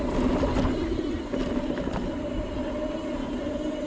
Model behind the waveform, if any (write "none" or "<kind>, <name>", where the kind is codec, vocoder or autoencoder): none